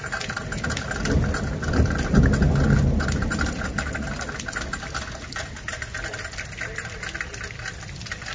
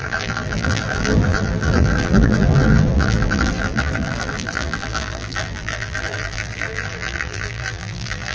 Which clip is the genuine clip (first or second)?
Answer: first